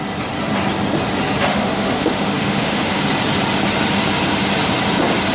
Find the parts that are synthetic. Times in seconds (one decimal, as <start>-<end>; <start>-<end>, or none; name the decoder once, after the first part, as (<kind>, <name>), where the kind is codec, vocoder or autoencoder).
1.5-3.0 (autoencoder, DAC-VAE)